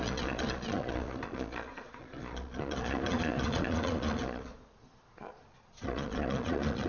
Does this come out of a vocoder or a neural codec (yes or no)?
yes